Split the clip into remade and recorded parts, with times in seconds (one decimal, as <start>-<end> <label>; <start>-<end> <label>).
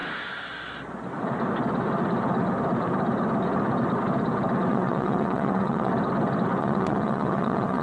0.0-4.7 recorded; 4.7-5.9 remade; 5.9-6.6 recorded; 6.6-7.8 remade